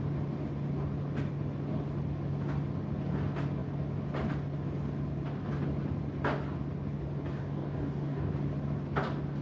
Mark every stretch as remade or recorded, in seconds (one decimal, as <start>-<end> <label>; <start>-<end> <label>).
0.0-7.4 recorded; 7.4-8.3 remade; 8.3-9.4 recorded

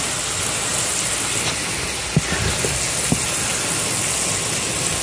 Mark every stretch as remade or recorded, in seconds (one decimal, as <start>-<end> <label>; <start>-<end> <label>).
0.0-5.0 recorded